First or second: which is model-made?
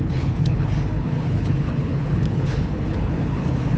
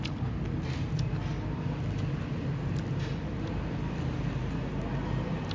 first